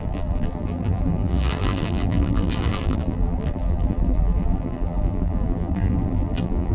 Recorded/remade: remade